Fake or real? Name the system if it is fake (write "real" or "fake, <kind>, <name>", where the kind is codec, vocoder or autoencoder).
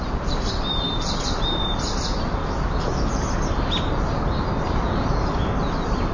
real